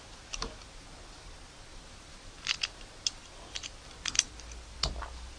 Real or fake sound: real